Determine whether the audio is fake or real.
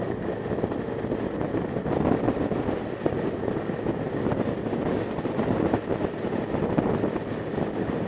real